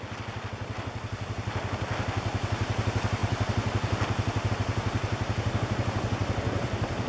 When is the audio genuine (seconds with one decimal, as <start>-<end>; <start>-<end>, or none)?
0.0-3.2; 4.5-6.2